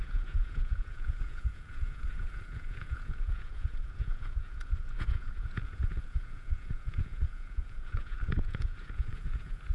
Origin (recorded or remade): remade